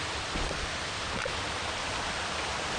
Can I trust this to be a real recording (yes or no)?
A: yes